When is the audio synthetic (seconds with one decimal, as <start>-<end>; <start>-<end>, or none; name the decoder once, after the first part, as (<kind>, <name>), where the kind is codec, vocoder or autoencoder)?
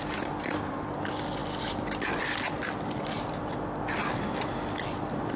none